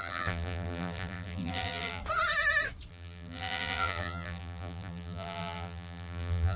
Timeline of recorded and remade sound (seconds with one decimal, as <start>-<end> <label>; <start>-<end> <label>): 0.0-2.0 remade; 2.0-2.9 recorded; 2.9-6.6 remade